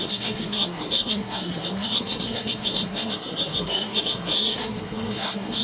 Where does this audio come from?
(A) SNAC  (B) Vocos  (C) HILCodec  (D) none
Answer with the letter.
A